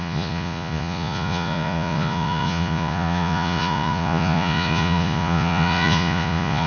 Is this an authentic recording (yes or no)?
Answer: no